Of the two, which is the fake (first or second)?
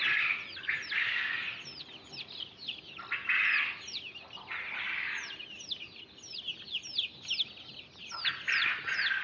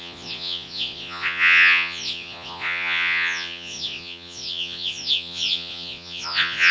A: second